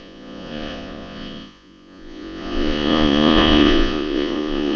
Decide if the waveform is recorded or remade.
remade